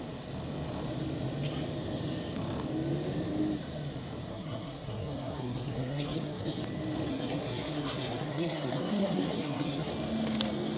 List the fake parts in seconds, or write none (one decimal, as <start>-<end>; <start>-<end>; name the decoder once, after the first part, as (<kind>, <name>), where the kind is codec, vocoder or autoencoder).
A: 4.3-6.6 (codec, SNAC); 7.1-9.9